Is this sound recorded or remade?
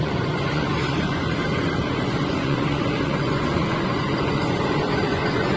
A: remade